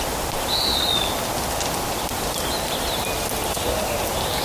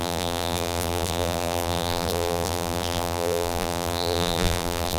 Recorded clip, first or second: first